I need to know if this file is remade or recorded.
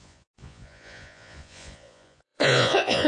remade